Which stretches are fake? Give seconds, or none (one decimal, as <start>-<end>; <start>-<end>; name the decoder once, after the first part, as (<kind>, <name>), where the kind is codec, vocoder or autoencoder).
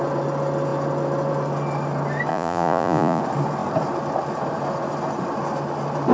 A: 2.3-3.2 (vocoder, Vocos)